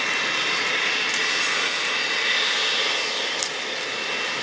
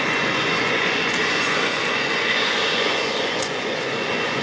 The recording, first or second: first